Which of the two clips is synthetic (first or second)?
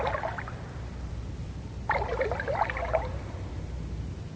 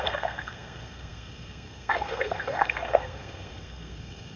second